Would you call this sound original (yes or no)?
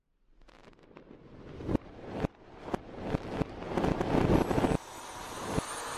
yes